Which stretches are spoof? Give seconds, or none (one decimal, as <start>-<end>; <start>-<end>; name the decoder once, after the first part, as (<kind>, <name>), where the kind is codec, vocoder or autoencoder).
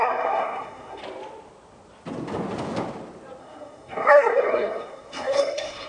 0.0-1.0 (codec, SNAC); 3.4-5.9